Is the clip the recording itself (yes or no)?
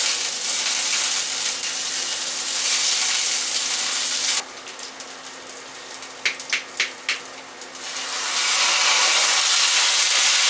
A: yes